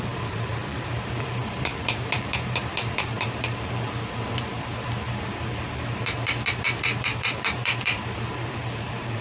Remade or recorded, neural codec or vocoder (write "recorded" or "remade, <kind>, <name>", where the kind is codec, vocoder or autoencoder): remade, vocoder, BigVGAN v2